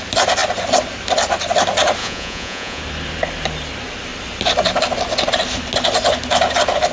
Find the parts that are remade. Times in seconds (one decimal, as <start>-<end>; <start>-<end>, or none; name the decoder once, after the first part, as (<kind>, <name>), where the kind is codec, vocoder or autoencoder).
2.0-2.8 (vocoder, Vocos)

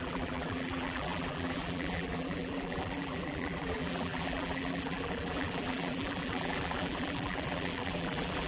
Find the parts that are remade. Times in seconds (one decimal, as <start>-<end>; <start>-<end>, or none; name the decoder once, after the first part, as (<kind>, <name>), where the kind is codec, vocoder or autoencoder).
0.0-8.5 (vocoder, BigVGAN v2)

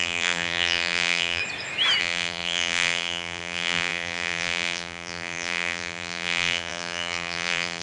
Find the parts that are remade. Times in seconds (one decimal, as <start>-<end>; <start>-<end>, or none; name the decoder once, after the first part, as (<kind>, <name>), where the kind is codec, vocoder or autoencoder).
0.0-1.4 (vocoder, BigVGAN v2); 2.0-7.8

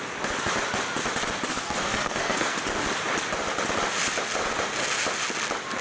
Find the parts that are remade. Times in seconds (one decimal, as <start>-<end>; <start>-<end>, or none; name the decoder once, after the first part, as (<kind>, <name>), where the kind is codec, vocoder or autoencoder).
1.5-2.6 (codec, SNAC)

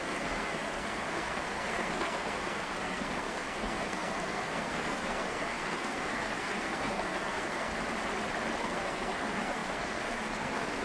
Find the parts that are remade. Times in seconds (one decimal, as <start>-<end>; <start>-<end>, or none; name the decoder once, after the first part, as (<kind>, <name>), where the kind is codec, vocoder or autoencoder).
0.0-7.7 (codec, SNAC); 8.6-10.8